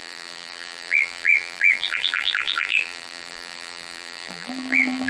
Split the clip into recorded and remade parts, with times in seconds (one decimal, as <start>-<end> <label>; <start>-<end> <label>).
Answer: 0.0-5.1 remade